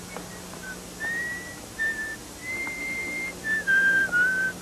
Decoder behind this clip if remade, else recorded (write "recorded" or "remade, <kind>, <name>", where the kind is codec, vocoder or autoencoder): recorded